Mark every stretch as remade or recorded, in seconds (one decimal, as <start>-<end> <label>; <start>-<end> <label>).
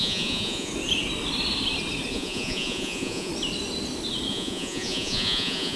0.0-0.7 remade; 0.7-2.1 recorded; 2.1-3.3 remade; 3.3-4.3 recorded; 4.3-5.8 remade